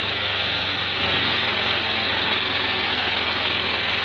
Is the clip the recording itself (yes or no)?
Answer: no